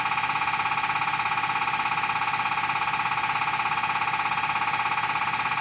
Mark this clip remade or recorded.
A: recorded